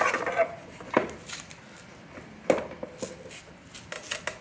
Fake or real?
real